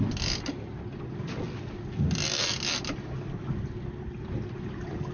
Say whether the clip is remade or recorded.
recorded